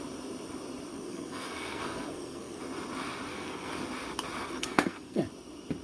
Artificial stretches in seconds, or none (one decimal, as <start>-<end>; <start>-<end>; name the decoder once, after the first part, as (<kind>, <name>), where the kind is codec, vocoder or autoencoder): 0.9-2.6 (codec, SNAC); 3.3-3.8; 4.4-5.2